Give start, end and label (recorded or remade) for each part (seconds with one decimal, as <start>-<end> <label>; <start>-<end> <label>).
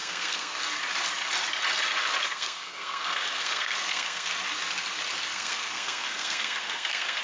0.0-0.6 remade; 0.6-2.2 recorded; 2.2-4.3 remade; 4.3-5.3 recorded; 5.3-7.2 remade